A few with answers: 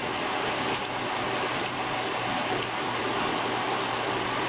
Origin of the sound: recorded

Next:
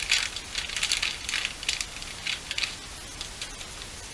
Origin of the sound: recorded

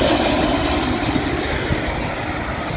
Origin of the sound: recorded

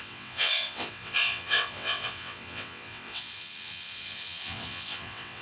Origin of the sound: remade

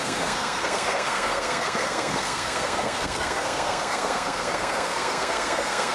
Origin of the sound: remade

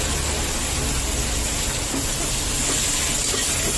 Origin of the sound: recorded